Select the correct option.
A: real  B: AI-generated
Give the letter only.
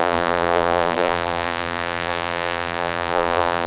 B